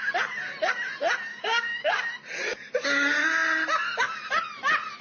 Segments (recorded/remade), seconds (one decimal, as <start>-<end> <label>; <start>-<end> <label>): 0.0-1.3 recorded; 1.3-1.9 remade; 1.9-5.0 recorded